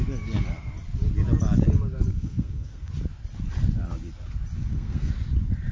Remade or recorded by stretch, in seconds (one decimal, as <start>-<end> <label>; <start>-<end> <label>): 0.0-2.1 recorded; 2.1-2.9 remade; 2.9-4.6 recorded; 4.6-5.1 remade; 5.1-5.7 recorded